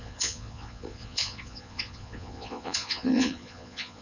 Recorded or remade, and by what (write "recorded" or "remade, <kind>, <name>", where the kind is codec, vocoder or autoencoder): remade, vocoder, Vocos